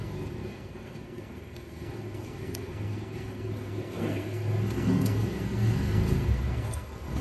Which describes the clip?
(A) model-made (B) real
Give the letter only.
A